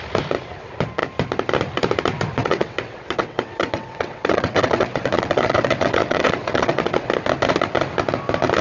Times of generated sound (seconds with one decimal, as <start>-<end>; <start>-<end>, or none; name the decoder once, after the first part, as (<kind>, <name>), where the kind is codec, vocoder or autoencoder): 2.4-7.1 (vocoder, WaveNeXt)